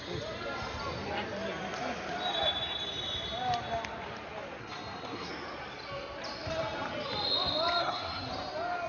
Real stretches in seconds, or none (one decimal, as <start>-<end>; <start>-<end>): 0.0-4.6; 5.3-7.8; 8.3-8.9